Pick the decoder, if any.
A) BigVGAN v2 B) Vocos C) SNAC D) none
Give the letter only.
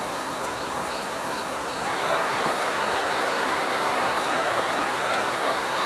C